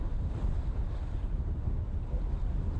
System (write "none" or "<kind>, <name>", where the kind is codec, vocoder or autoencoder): none